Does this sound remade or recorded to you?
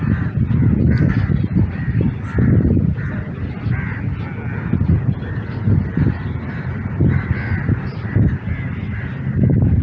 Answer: recorded